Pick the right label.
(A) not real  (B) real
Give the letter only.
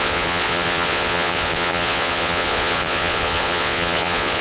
A